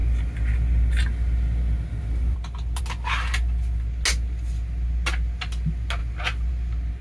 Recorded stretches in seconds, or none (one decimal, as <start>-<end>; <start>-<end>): 0.0-7.0